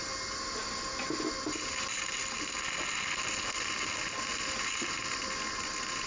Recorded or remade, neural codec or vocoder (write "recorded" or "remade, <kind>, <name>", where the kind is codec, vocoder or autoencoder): recorded